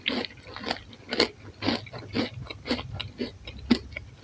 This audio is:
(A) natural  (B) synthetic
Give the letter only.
A